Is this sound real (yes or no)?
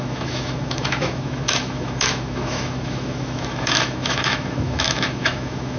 no